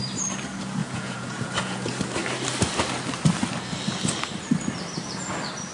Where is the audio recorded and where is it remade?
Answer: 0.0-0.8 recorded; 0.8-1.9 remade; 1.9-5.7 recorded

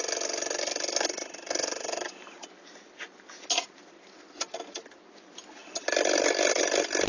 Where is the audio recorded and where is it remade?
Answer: 0.0-7.1 recorded

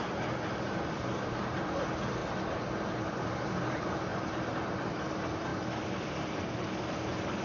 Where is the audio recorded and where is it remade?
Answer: 0.0-4.1 remade; 4.1-4.9 recorded; 4.9-7.4 remade